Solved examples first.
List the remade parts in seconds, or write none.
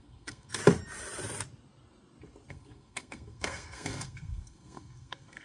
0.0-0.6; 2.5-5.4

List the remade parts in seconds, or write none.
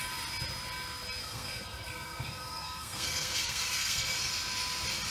1.2-4.3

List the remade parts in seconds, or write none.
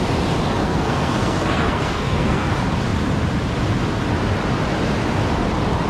0.6-2.5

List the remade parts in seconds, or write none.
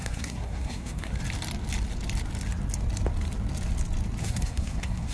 0.0-1.1; 4.2-5.1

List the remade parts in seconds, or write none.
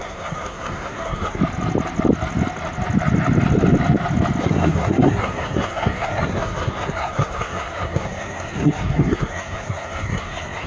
0.0-1.4; 4.4-10.7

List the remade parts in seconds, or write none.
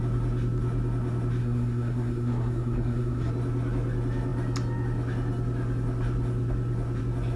1.4-3.3